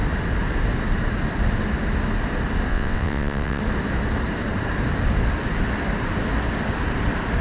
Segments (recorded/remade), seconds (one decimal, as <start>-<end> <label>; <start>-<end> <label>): 0.0-2.7 recorded; 2.7-3.6 remade; 3.6-7.4 recorded